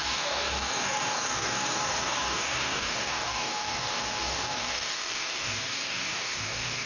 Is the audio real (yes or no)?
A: no